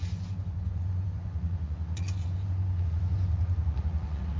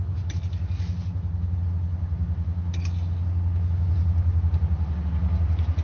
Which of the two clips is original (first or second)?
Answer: second